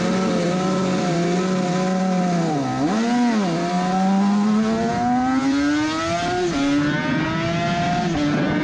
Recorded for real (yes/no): yes